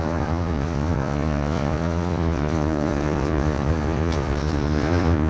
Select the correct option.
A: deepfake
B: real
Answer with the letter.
A